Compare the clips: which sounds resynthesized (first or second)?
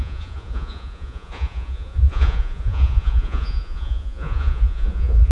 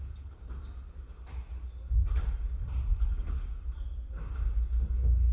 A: first